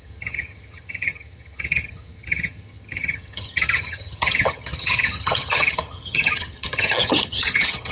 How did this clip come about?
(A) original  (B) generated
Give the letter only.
B